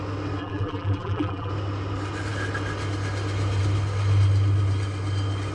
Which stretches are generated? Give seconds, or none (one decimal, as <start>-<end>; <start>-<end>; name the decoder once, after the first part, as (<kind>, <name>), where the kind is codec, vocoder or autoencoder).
0.4-1.5 (vocoder, BigVGAN v2)